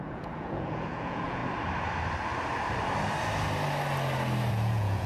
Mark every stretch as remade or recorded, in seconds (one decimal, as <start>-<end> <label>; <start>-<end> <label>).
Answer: 0.0-1.4 remade; 1.4-4.5 recorded; 4.5-5.1 remade